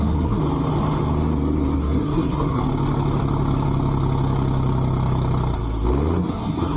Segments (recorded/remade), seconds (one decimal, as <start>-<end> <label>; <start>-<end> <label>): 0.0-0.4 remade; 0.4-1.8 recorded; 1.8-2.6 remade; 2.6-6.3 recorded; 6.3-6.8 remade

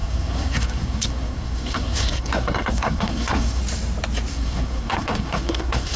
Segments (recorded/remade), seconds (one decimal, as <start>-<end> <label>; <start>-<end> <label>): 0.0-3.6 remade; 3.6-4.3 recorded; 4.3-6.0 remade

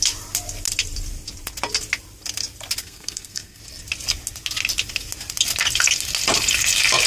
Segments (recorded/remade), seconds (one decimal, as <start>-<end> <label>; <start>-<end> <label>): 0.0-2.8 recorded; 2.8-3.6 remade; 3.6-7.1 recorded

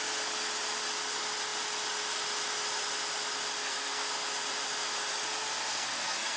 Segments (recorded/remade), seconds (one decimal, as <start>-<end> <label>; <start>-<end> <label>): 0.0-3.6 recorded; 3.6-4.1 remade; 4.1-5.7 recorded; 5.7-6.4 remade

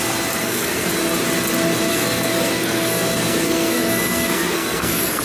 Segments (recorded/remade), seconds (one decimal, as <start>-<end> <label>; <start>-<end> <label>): 0.0-0.4 recorded; 0.4-0.9 remade; 0.9-1.9 recorded; 1.9-5.2 remade

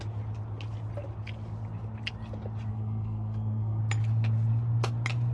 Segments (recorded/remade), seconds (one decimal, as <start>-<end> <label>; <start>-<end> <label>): 0.0-2.7 recorded; 2.7-3.8 remade; 3.8-5.3 recorded